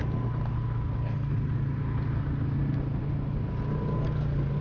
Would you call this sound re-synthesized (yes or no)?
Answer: no